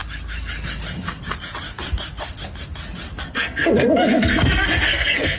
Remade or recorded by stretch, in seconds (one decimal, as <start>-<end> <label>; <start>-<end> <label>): 0.0-3.2 recorded; 3.2-5.4 remade